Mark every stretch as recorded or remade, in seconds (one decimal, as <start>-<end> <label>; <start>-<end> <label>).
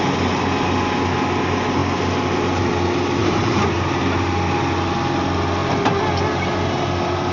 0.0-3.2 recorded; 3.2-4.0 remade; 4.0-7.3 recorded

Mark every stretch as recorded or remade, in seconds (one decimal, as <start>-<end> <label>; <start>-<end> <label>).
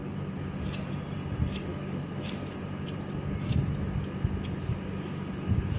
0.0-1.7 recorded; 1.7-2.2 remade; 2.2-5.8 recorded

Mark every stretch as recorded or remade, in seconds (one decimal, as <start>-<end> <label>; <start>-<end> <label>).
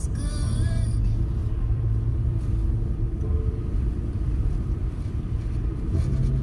0.0-1.4 recorded; 1.4-5.2 remade; 5.2-6.4 recorded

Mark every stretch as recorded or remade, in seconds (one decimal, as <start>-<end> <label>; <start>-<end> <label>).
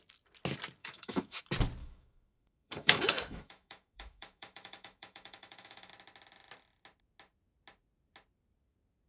0.0-0.8 recorded; 0.8-1.4 remade; 1.4-1.8 recorded; 1.8-5.9 remade; 5.9-9.1 recorded